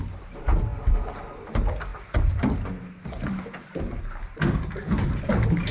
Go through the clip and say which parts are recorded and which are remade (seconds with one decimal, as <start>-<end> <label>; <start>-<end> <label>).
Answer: 0.0-5.7 recorded